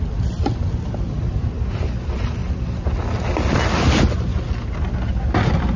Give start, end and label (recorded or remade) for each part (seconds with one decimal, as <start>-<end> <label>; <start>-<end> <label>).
0.0-2.4 recorded; 2.4-3.0 remade; 3.0-5.8 recorded